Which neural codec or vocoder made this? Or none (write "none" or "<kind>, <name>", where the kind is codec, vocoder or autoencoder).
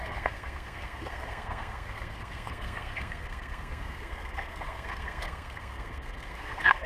codec, SNAC